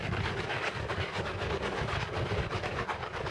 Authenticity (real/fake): fake